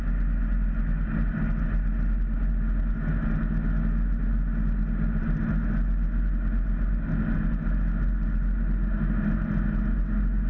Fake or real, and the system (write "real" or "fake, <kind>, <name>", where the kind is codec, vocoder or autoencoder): real